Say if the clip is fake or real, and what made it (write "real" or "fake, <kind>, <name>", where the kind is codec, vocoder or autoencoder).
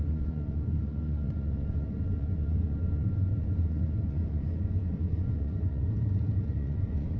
fake, vocoder, Vocos